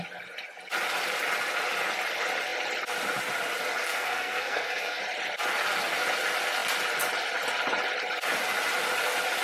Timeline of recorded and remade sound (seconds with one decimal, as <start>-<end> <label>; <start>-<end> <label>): 0.0-3.9 recorded; 3.9-5.0 remade; 5.0-9.4 recorded